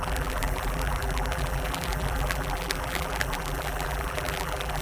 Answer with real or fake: fake